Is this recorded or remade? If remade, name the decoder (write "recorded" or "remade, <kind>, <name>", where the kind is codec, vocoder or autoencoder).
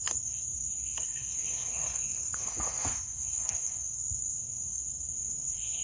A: remade, codec, SNAC